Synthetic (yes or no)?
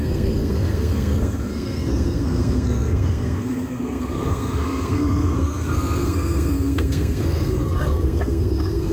yes